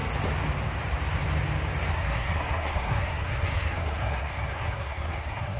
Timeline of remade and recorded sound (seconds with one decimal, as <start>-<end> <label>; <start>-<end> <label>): 0.0-1.9 recorded; 1.9-5.6 remade